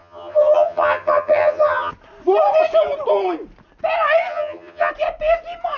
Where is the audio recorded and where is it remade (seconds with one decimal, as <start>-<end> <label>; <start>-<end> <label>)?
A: 0.0-1.9 remade; 1.9-4.3 recorded; 4.3-4.9 remade; 4.9-5.8 recorded